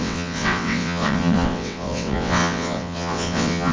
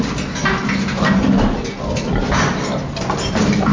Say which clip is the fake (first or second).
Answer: first